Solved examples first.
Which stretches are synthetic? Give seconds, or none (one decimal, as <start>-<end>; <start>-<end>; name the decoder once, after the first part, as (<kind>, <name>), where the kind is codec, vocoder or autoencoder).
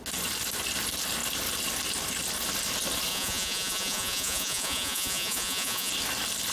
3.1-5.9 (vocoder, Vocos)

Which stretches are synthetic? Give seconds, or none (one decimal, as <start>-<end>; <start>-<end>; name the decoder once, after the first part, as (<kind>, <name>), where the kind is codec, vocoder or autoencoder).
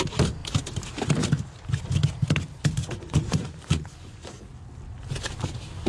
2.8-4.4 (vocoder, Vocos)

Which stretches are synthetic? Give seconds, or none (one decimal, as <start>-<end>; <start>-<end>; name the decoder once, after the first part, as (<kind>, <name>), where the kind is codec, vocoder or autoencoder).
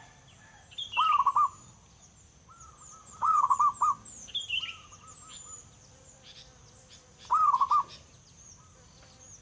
3.0-3.6 (vocoder, Vocos)